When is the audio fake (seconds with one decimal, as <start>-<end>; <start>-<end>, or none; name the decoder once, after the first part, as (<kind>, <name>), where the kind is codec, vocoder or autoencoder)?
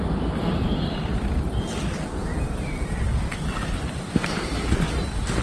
none